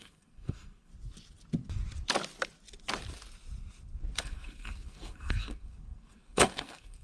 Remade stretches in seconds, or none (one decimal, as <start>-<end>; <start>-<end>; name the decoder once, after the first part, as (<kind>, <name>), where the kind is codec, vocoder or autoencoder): 0.0-0.9 (codec, SNAC); 4.2-7.0